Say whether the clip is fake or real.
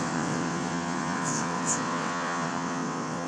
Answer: fake